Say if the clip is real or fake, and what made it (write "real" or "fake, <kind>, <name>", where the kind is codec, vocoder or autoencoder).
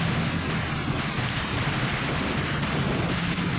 real